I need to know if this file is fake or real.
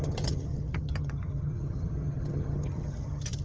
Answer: fake